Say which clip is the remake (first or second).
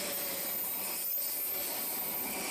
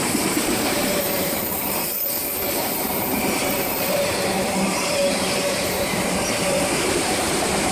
second